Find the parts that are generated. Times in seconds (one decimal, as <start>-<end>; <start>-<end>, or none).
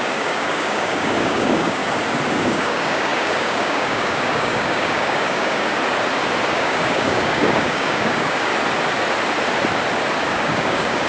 0.0-1.8; 2.3-5.7; 6.5-8.5; 10.3-11.1